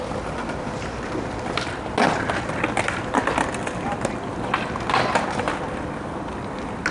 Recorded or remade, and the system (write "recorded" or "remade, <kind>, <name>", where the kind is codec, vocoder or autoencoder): recorded